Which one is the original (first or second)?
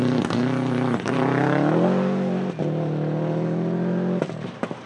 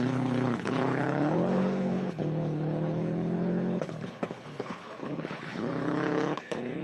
first